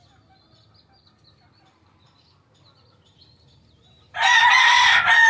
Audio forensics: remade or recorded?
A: recorded